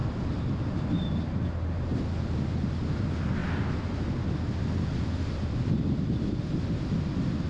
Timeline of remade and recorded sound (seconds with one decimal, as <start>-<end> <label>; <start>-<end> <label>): 0.0-0.5 remade; 0.5-3.4 recorded; 3.4-5.7 remade; 5.7-7.5 recorded